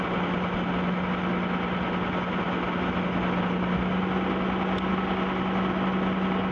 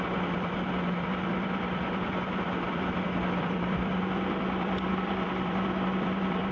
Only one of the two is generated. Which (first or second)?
second